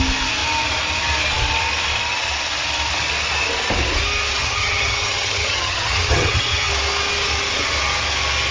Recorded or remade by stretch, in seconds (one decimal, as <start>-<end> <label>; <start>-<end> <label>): 0.0-4.4 recorded; 4.4-6.7 remade; 6.7-8.5 recorded